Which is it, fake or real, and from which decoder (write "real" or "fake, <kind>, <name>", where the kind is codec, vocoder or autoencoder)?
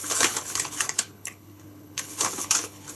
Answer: fake, codec, HILCodec